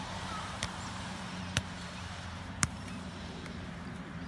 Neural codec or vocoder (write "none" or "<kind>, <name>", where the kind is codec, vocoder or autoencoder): vocoder, BigVGAN v2